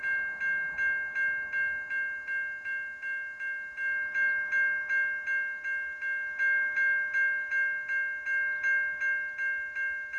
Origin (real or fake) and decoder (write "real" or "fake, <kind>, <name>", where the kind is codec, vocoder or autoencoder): real